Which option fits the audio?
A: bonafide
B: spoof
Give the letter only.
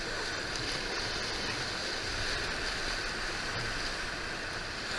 A